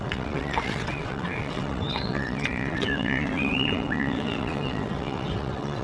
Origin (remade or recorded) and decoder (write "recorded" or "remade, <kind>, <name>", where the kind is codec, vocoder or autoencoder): remade, vocoder, WaveNeXt